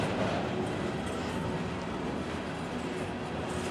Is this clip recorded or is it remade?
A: recorded